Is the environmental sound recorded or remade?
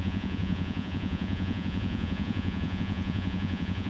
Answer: remade